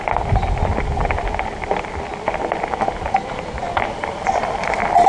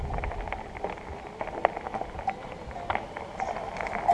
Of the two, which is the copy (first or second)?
first